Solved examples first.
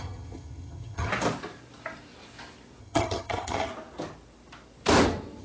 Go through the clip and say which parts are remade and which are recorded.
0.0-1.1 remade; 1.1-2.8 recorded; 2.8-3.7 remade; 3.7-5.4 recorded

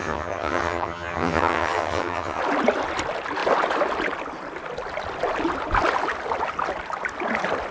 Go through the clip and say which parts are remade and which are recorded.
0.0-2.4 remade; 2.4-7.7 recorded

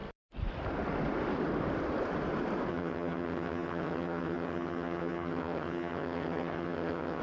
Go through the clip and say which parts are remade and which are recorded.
0.0-2.7 recorded; 2.7-7.2 remade

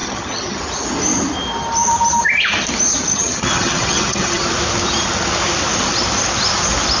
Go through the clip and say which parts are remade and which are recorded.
0.0-0.6 remade; 0.6-3.1 recorded; 3.1-4.4 remade; 4.4-7.0 recorded